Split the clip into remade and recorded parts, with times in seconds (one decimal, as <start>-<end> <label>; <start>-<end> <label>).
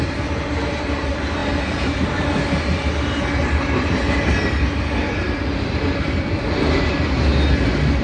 0.0-8.0 recorded